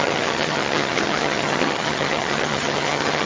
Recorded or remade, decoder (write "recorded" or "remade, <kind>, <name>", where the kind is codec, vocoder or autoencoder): remade, vocoder, HiFi-GAN